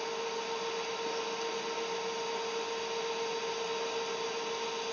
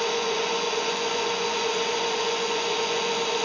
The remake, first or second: second